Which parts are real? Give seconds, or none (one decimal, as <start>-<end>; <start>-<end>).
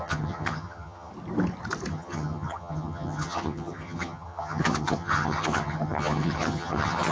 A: 1.1-1.9